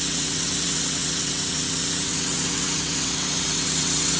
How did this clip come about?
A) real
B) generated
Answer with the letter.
B